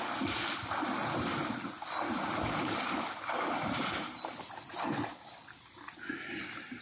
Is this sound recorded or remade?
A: recorded